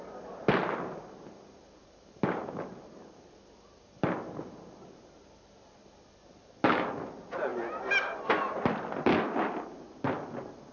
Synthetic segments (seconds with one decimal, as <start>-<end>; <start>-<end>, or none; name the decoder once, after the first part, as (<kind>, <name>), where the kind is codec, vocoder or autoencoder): 7.5-8.2 (vocoder, BigVGAN v2)